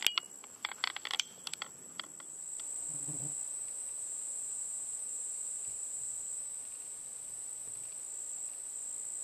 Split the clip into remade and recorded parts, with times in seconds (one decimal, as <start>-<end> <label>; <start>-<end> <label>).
0.0-0.4 recorded; 0.4-2.0 remade; 2.0-3.5 recorded; 3.5-7.2 remade; 7.2-9.2 recorded